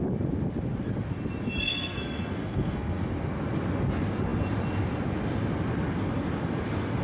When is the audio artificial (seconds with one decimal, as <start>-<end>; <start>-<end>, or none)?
1.6-3.1